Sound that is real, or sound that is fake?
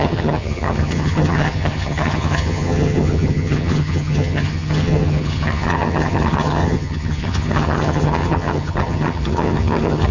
fake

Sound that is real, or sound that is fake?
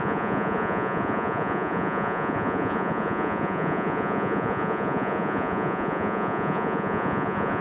fake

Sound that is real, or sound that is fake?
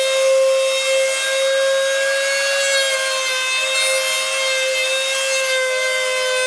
real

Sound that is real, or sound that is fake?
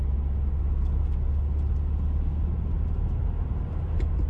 real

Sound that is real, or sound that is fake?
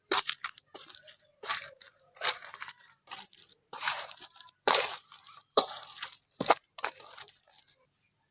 fake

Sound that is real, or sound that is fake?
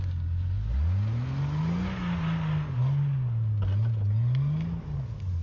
real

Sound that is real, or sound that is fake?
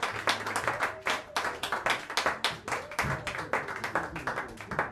real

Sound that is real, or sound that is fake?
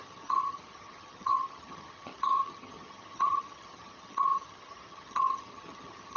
fake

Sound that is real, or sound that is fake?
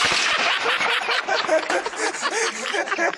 real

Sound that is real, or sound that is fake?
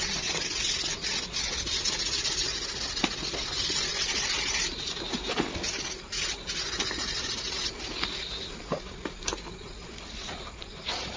real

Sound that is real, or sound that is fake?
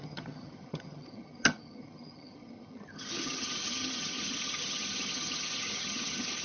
fake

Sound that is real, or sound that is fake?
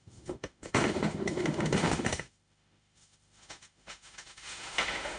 fake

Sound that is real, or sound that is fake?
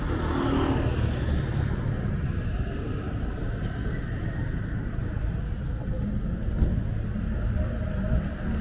real